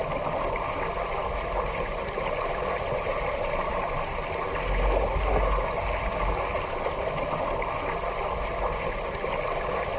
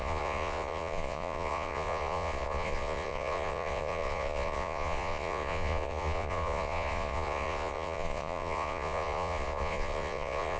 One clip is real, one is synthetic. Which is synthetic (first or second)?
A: second